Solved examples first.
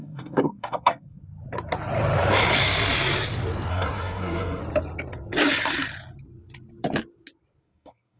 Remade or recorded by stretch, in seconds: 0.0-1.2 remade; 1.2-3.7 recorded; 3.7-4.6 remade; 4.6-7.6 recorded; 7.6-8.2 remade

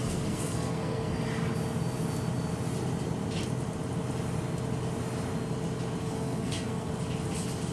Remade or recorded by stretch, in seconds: 0.0-1.2 remade; 1.2-6.0 recorded; 6.0-6.9 remade; 6.9-7.7 recorded

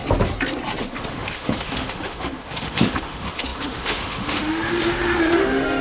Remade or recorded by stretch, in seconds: 0.0-0.8 recorded; 0.8-5.8 remade

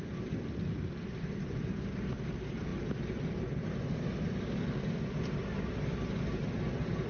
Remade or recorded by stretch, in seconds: 0.0-7.1 recorded

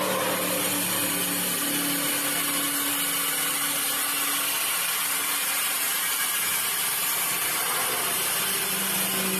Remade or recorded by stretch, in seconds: 0.0-9.4 recorded

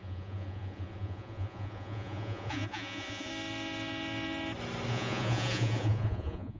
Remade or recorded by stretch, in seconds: 0.0-3.3 remade; 3.3-4.9 recorded; 4.9-6.6 remade

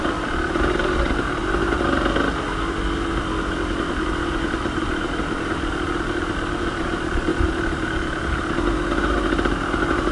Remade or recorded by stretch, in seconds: 0.0-1.4 remade; 1.4-3.9 recorded; 3.9-7.3 remade; 7.3-10.1 recorded

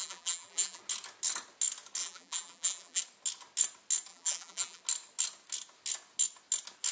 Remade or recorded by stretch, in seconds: 0.0-0.8 remade; 0.8-2.0 recorded; 2.0-3.0 remade; 3.0-4.1 recorded; 4.1-4.8 remade; 4.8-6.9 recorded